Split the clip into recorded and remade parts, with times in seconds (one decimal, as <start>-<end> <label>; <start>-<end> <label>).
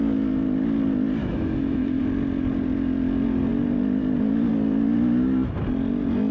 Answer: 0.0-1.2 recorded; 1.2-2.0 remade; 2.0-6.3 recorded